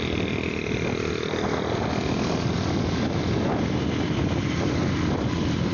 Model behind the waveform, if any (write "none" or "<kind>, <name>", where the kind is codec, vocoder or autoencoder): none